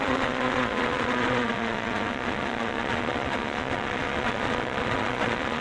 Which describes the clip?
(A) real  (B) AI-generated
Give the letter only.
B